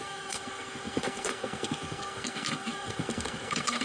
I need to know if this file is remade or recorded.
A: remade